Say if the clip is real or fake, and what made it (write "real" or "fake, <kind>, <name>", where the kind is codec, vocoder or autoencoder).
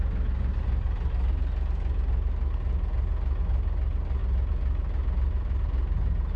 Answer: real